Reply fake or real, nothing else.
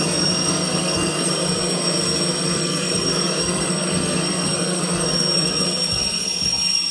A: fake